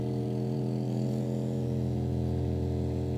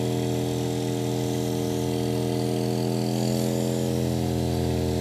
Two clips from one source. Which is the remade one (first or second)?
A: first